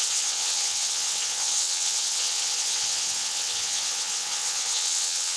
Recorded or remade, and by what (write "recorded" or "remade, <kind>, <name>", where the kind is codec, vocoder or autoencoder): remade, vocoder, WaveNeXt